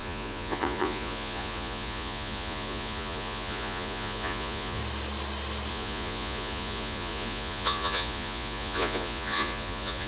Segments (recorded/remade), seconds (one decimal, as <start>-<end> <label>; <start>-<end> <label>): 0.0-4.8 remade; 4.8-5.7 recorded; 5.7-10.1 remade